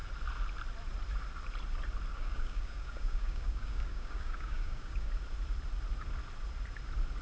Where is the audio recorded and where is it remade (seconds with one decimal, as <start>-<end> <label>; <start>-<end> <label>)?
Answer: 0.0-2.1 recorded; 2.1-5.1 remade; 5.1-7.2 recorded